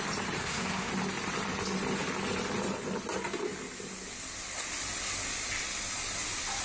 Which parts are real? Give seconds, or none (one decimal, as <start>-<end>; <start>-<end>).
0.0-0.4; 0.9-6.6